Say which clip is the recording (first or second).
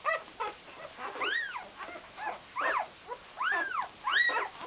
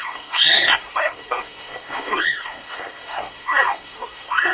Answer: first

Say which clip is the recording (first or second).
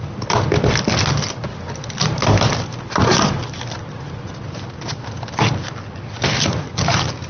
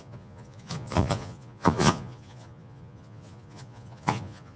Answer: first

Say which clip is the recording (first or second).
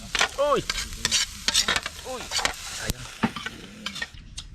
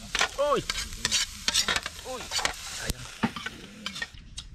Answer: first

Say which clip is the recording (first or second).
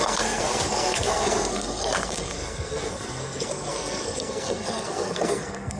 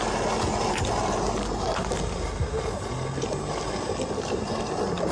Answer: second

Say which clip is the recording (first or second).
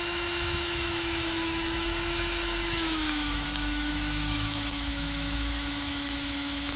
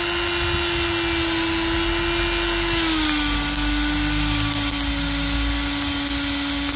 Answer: second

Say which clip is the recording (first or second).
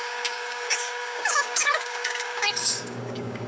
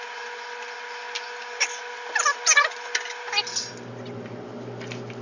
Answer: second